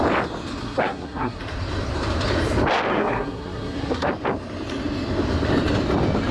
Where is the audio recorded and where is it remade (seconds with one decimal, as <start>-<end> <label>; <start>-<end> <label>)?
0.0-0.6 recorded; 0.6-1.4 remade; 1.4-2.9 recorded; 2.9-4.1 remade; 4.1-6.3 recorded